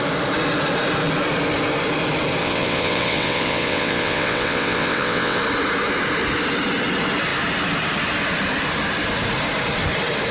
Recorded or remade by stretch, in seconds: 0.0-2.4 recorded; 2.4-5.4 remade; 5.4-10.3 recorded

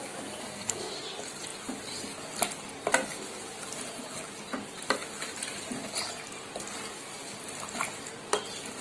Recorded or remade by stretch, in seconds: 0.0-0.4 recorded; 0.4-0.9 remade; 0.9-8.8 recorded